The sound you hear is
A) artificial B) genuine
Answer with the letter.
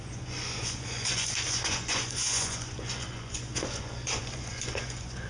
A